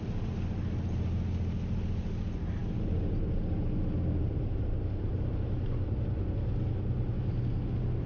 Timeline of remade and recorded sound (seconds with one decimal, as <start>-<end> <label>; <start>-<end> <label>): 0.0-8.1 recorded